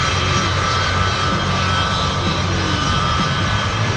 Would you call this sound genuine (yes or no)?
no